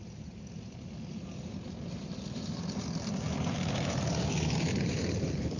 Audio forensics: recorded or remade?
remade